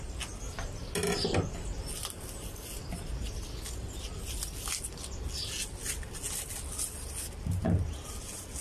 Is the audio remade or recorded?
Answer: recorded